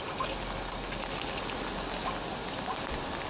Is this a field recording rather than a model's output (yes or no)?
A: yes